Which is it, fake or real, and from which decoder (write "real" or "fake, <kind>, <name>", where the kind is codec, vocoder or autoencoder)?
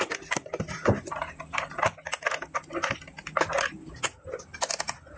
real